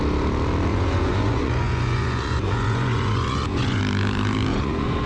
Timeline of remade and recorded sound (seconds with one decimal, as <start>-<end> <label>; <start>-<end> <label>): 0.0-0.7 recorded; 0.7-3.8 remade; 3.8-4.5 recorded; 4.5-5.1 remade